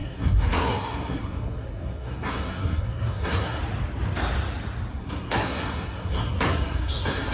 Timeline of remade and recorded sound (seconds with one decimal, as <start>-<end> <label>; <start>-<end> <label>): 0.0-3.6 remade; 3.6-4.9 recorded; 4.9-7.3 remade